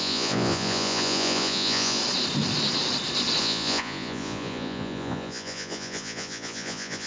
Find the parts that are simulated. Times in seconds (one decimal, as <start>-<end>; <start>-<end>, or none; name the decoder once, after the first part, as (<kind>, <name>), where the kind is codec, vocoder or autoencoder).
0.0-2.0 (vocoder, Vocos); 3.4-7.1